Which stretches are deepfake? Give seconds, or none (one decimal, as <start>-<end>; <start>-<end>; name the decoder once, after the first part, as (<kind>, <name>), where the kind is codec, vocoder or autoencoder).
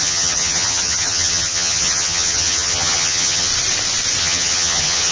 0.0-3.5 (vocoder, HiFi-GAN); 4.2-5.1